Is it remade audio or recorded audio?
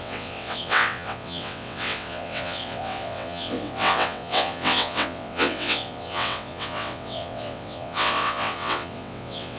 remade